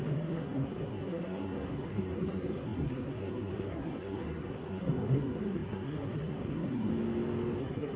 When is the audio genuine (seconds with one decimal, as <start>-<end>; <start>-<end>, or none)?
6.9-7.6